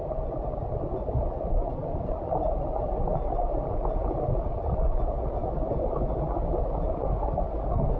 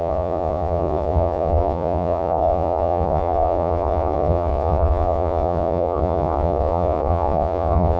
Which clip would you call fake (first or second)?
second